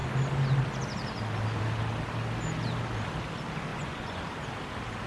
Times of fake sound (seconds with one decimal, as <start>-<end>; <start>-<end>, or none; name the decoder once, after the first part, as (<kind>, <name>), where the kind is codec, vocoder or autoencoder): 3.7-4.2 (vocoder, Vocos)